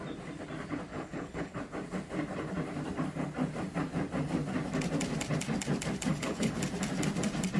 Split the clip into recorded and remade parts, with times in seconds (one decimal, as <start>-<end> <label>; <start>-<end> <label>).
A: 0.0-0.9 recorded; 0.9-1.6 remade; 1.6-6.1 recorded; 6.1-6.6 remade; 6.6-7.6 recorded